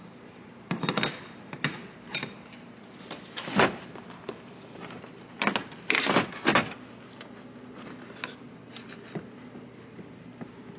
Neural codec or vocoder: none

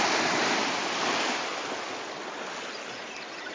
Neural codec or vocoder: none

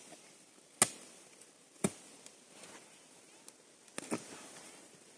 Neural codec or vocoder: none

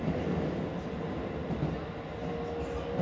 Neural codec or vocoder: none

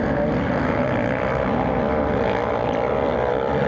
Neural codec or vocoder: none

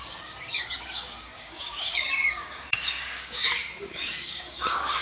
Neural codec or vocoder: codec, DAC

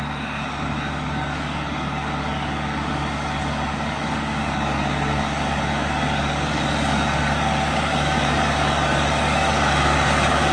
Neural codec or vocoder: codec, DAC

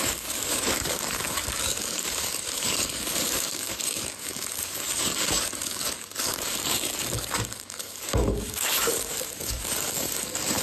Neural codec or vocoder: codec, DAC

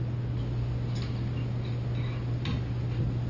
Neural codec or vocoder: none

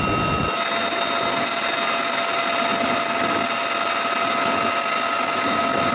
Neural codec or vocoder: none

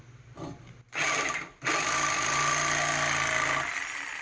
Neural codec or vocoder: none